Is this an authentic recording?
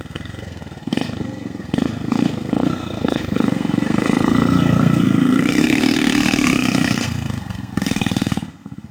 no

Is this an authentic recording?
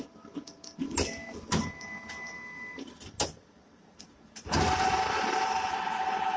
yes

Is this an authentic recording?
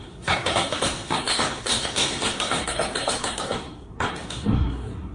no